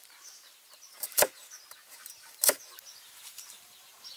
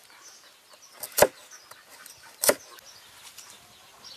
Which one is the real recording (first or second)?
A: second